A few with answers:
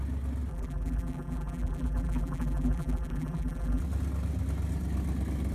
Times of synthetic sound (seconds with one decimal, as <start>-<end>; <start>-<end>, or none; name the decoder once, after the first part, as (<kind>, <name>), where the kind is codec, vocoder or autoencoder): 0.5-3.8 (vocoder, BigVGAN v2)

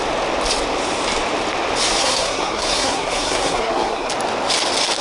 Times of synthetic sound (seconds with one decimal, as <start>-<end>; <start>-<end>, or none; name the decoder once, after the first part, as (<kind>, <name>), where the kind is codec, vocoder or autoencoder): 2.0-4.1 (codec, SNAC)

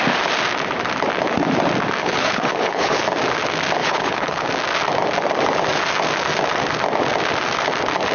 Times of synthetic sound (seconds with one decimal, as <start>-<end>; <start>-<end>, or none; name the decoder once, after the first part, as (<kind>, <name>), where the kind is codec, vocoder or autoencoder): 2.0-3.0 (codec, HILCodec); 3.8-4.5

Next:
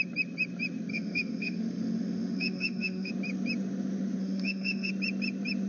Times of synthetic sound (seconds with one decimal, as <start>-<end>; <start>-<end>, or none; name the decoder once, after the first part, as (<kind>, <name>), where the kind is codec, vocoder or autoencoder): 0.9-3.1 (autoencoder, DAC-VAE); 4.2-4.9